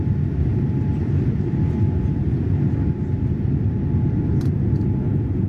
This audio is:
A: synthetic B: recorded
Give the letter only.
B